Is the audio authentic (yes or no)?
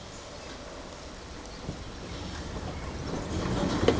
yes